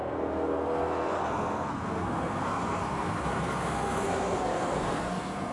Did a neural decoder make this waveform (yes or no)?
yes